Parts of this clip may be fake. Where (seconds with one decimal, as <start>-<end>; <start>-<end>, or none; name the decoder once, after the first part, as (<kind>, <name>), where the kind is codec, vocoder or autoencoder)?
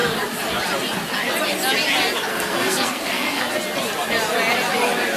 2.3-3.5 (codec, SNAC)